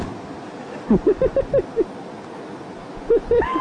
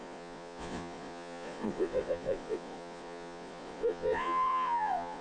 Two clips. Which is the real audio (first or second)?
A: first